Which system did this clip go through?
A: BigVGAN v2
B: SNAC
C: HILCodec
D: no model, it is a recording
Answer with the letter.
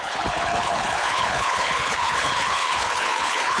C